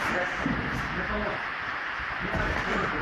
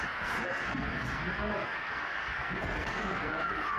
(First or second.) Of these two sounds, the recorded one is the first